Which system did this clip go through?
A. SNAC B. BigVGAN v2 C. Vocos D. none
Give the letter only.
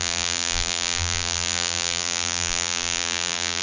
B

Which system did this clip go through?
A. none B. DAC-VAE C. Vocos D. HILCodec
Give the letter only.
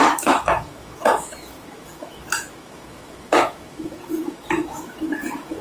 B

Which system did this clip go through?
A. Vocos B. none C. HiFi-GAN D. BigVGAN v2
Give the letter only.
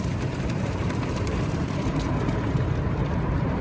D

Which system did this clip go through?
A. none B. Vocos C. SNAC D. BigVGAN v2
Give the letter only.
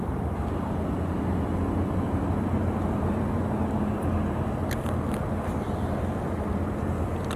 A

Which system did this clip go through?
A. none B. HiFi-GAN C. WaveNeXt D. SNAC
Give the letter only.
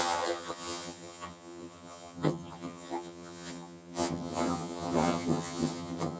B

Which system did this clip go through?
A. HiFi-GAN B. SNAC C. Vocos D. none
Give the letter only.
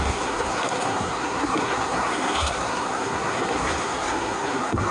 B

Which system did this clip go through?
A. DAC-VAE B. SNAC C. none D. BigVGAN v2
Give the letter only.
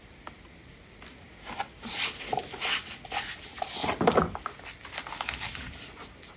C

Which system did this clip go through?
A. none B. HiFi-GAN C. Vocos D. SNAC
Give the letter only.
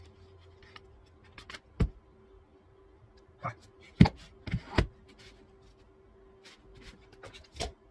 A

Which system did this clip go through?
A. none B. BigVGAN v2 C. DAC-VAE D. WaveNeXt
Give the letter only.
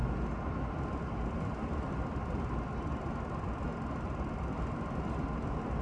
A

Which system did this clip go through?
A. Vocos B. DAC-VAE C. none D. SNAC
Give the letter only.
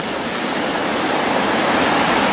C